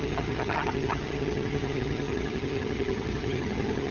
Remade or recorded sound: remade